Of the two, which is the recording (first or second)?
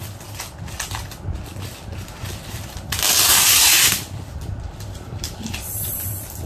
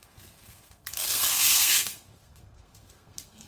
first